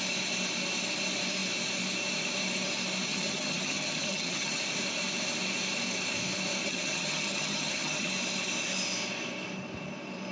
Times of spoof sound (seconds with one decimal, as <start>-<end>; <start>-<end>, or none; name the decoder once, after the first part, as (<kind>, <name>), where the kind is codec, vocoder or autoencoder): 3.1-4.6 (vocoder, HiFi-GAN); 6.6-8.1